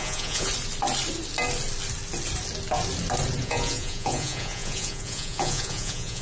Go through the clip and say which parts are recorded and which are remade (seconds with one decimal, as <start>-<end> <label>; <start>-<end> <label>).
0.0-0.5 remade; 0.5-3.4 recorded; 3.4-6.2 remade